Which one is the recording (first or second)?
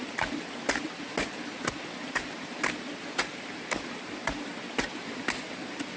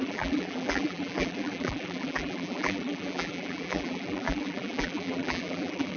first